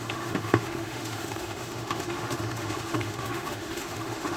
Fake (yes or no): yes